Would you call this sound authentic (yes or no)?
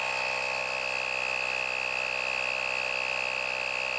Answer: yes